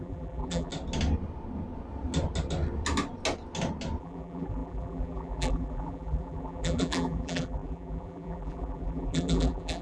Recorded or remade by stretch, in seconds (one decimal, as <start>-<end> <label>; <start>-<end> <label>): 0.0-0.7 remade; 0.7-4.0 recorded; 4.0-9.8 remade